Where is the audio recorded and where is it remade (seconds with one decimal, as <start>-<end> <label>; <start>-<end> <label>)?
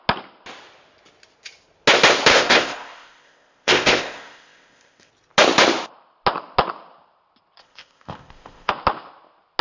0.0-2.3 recorded; 2.3-5.1 remade; 5.1-7.6 recorded; 7.6-8.7 remade; 8.7-9.6 recorded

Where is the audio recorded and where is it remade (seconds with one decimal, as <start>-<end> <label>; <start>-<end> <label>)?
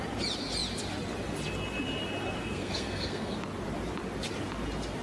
0.0-2.4 recorded; 2.4-3.4 remade; 3.4-5.0 recorded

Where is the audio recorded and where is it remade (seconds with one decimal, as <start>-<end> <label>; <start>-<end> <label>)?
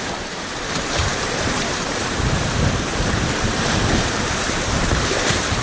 0.0-5.6 remade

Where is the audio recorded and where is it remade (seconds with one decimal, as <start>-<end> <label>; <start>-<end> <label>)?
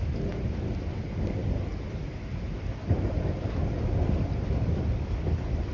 0.0-5.7 recorded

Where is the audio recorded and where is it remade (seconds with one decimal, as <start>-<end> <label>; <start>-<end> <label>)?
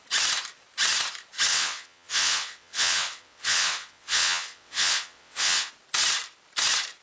0.0-1.5 recorded; 1.5-5.7 remade; 5.7-7.0 recorded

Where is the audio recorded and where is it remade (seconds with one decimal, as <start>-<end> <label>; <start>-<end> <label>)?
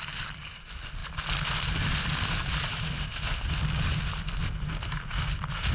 0.0-5.7 recorded